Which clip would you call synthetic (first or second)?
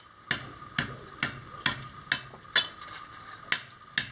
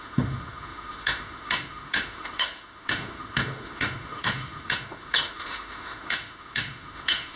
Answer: second